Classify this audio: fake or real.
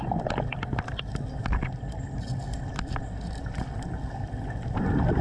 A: real